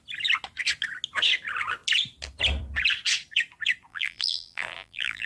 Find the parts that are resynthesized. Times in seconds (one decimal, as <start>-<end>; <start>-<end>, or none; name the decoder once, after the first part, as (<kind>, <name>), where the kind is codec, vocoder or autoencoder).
3.9-5.3 (vocoder, BigVGAN v2)